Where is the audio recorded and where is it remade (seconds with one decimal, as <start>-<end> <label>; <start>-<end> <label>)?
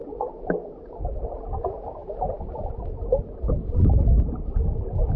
0.0-5.2 recorded